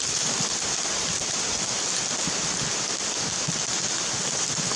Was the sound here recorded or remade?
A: recorded